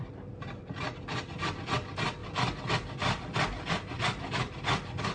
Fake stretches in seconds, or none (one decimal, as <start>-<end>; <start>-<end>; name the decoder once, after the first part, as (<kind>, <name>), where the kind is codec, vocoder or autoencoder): none